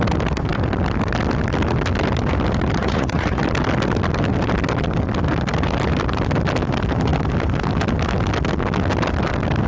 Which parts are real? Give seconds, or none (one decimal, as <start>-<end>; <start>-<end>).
0.0-2.8; 3.4-9.7

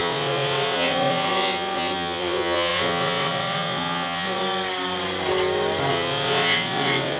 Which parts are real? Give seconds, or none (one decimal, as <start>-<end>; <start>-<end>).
4.4-5.9

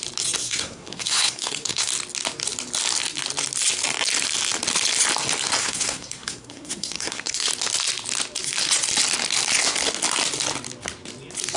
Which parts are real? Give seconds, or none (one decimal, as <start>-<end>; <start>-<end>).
0.0-0.4; 1.9-5.6; 7.5-11.6